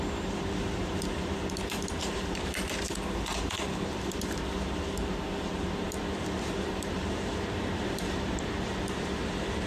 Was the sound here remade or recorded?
remade